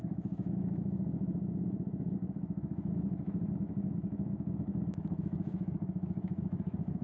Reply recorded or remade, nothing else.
remade